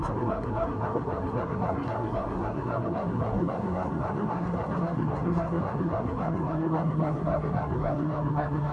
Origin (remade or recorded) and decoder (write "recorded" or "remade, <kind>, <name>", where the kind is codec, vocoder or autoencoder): remade, codec, SNAC